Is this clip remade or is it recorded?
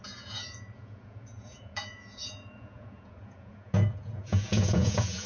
remade